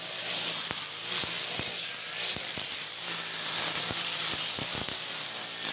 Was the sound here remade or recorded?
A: recorded